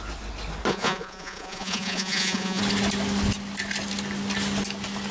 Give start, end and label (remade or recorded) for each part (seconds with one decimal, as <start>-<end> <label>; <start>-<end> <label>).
0.0-0.7 recorded; 0.7-2.6 remade; 2.6-5.1 recorded